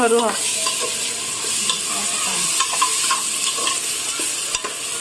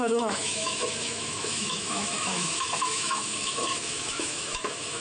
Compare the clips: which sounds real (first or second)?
first